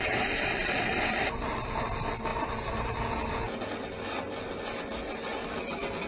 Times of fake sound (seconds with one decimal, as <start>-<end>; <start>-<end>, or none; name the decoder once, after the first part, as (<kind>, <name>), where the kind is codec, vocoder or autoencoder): 0.0-2.3 (vocoder, BigVGAN v2)

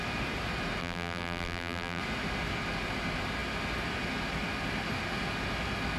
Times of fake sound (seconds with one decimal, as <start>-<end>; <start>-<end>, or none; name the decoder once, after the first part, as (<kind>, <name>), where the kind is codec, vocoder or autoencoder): 0.8-2.0 (vocoder, BigVGAN v2)

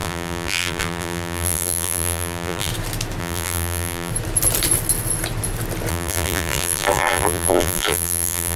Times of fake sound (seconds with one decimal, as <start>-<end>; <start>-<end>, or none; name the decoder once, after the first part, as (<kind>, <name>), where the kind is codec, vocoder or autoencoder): 0.0-2.7 (vocoder, BigVGAN v2); 3.2-4.1; 5.9-8.6

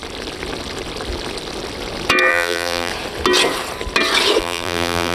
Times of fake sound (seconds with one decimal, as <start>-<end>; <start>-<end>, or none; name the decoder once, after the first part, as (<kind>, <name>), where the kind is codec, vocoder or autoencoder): 2.3-2.9 (vocoder, BigVGAN v2); 4.4-5.1